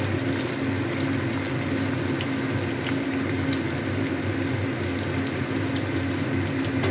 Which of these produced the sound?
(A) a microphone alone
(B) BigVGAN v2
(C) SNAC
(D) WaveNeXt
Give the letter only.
A